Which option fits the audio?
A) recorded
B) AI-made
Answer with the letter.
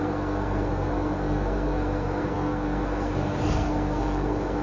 B